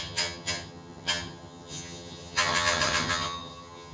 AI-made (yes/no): yes